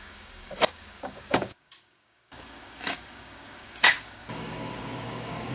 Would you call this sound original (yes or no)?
no